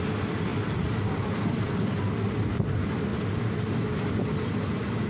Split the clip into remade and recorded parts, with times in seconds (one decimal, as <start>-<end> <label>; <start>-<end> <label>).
0.0-0.5 recorded; 0.5-2.0 remade; 2.0-5.1 recorded

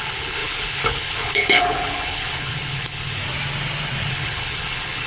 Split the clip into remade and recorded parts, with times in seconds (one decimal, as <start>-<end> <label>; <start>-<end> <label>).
0.0-3.2 remade; 3.2-4.1 recorded; 4.1-5.1 remade

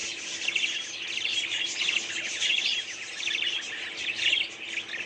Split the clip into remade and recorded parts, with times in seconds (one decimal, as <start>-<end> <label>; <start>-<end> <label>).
0.0-5.1 recorded

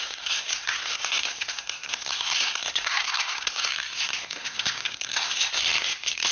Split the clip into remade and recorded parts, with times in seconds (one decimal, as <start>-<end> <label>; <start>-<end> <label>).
0.0-6.3 remade

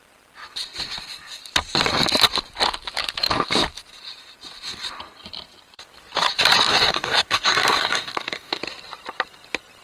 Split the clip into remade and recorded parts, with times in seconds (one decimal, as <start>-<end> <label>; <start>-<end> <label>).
0.0-6.7 recorded; 6.7-8.6 remade; 8.6-9.8 recorded

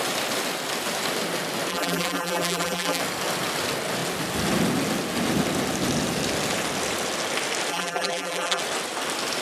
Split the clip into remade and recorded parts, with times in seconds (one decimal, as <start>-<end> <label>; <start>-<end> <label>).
0.0-1.7 recorded; 1.7-3.0 remade; 3.0-7.7 recorded; 7.7-8.6 remade; 8.6-9.4 recorded

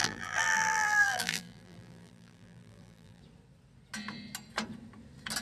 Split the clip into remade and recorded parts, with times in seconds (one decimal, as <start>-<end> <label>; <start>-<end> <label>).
0.0-3.2 remade; 3.2-5.4 recorded

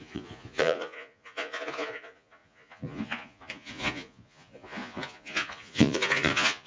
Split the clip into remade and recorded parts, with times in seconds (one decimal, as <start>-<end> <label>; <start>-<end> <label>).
0.0-6.7 remade